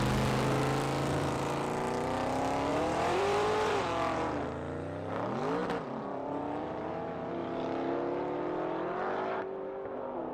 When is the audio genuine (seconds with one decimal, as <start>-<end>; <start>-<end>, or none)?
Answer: 0.0-2.7; 3.9-5.6; 6.9-10.3

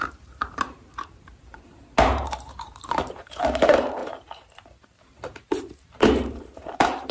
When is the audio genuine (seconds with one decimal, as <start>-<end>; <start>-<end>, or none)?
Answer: 4.0-5.0

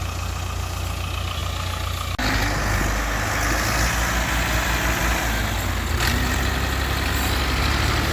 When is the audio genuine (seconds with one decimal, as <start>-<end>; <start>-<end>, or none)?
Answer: 0.0-8.1